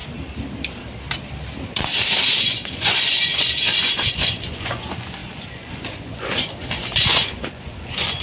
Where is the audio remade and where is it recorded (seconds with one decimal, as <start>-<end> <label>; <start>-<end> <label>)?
0.0-2.4 recorded; 2.4-8.2 remade